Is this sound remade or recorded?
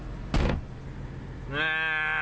recorded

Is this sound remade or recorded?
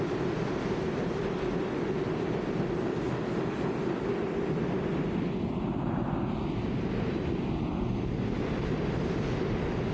recorded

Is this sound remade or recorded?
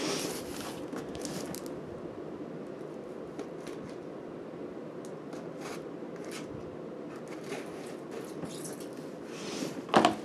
recorded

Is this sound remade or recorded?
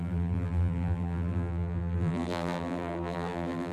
remade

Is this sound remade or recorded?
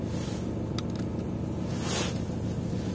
recorded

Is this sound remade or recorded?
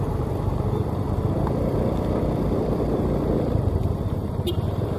remade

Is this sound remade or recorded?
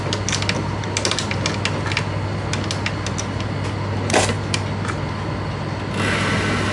recorded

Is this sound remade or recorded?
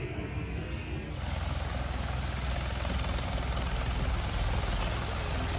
recorded